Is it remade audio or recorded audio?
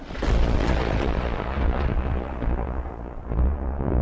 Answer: remade